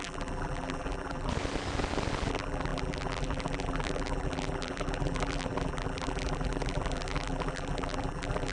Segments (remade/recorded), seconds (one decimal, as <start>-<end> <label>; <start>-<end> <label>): 0.0-1.3 remade; 1.3-2.3 recorded; 2.3-8.5 remade